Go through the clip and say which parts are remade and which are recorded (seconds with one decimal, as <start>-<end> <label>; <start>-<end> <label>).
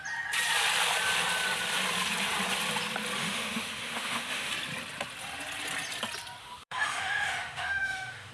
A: 0.0-3.2 recorded; 3.2-4.5 remade; 4.5-6.4 recorded; 6.4-8.3 remade